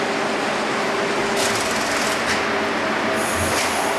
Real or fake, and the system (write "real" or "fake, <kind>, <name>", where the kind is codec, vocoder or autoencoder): real